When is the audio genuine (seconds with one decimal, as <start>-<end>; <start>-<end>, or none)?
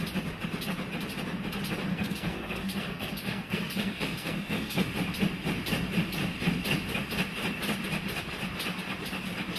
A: 0.0-1.9; 4.9-9.6